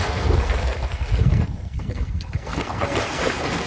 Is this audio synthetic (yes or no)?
yes